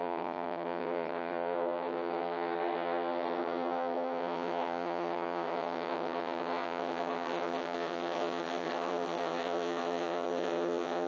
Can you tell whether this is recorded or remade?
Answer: remade